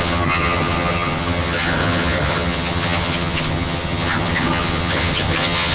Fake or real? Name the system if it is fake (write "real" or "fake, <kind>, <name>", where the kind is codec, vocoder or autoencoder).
fake, vocoder, HiFi-GAN